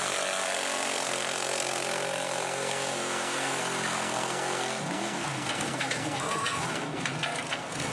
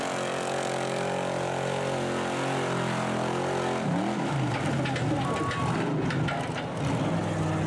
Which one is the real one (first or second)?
second